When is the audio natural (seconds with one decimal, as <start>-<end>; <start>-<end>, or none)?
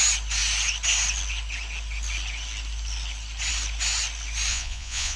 0.0-4.5